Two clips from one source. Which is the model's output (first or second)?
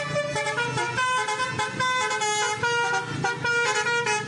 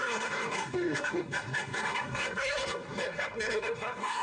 second